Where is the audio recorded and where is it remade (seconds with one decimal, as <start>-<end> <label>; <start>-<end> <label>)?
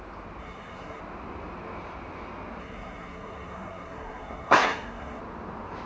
0.0-0.4 recorded; 0.4-1.0 remade; 1.0-2.6 recorded; 2.6-5.2 remade; 5.2-5.9 recorded